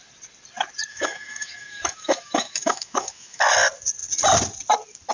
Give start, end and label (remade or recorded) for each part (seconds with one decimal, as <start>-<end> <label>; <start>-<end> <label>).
0.0-0.9 recorded; 0.9-3.4 remade; 3.4-5.1 recorded